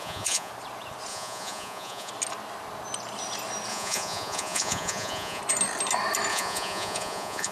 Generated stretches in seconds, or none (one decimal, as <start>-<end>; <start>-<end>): 0.0-0.5; 1.1-2.1; 3.7-5.4; 6.3-7.5